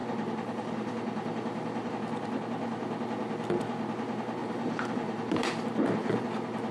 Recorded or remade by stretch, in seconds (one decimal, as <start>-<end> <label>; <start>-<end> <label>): 0.0-1.9 remade; 1.9-4.4 recorded; 4.4-5.6 remade; 5.6-6.7 recorded